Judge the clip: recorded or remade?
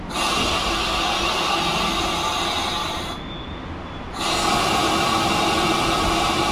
recorded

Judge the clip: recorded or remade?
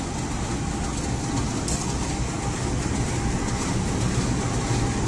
recorded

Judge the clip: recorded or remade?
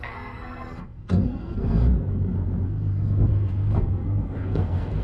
remade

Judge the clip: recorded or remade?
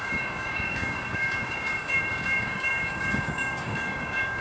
remade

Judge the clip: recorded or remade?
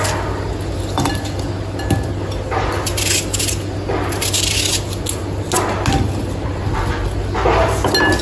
recorded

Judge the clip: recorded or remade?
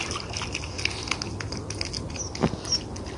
recorded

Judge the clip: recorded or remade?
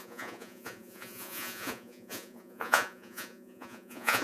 remade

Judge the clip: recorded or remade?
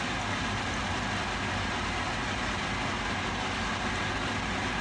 recorded